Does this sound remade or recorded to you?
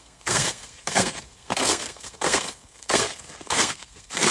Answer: remade